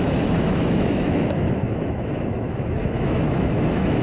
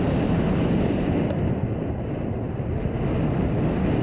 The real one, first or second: second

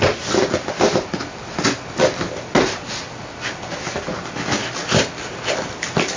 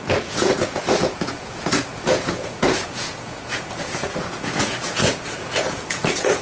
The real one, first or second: first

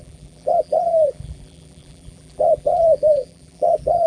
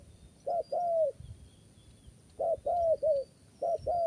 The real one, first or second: second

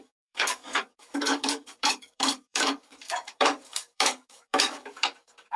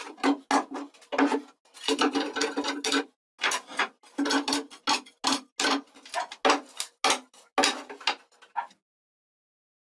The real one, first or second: second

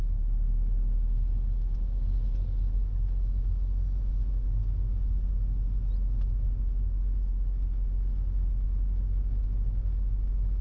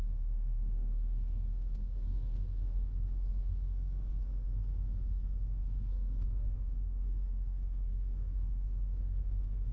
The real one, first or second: first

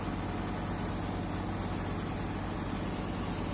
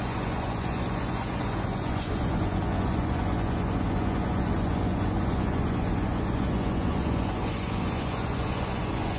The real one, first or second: first